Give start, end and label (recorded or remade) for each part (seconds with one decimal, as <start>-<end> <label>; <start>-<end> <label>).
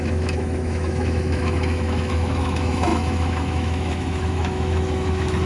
0.0-5.5 remade